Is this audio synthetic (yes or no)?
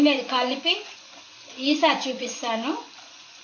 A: yes